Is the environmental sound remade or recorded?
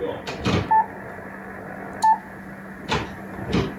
recorded